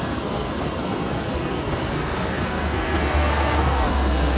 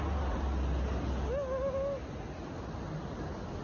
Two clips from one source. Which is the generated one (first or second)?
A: first